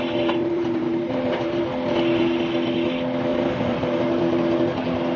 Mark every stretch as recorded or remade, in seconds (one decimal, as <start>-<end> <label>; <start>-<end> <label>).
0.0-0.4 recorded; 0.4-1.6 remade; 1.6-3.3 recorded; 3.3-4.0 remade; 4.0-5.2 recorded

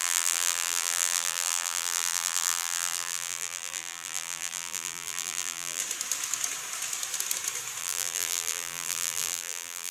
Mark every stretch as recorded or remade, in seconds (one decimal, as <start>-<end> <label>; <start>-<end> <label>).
0.0-5.8 remade; 5.8-7.8 recorded; 7.8-9.9 remade

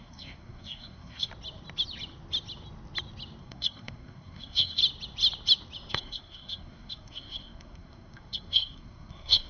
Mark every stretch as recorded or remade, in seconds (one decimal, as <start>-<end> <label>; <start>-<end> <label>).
0.0-1.3 remade; 1.3-3.4 recorded; 3.4-4.8 remade; 4.8-5.9 recorded; 5.9-9.5 remade

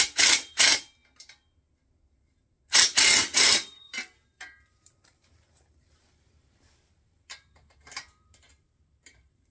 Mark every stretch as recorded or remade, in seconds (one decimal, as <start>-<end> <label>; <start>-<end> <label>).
0.0-0.7 remade; 0.7-2.7 recorded; 2.7-9.5 remade

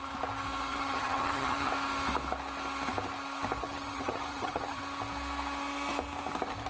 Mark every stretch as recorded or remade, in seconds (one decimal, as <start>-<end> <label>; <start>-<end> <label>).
0.0-0.7 recorded; 0.7-1.7 remade; 1.7-3.6 recorded; 3.6-4.8 remade; 4.8-6.7 recorded